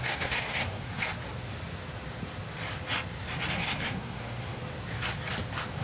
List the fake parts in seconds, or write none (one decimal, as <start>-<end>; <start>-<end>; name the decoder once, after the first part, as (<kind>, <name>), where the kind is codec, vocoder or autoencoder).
0.0-1.0 (codec, SNAC); 3.6-4.6